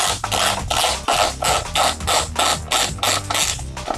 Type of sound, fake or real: real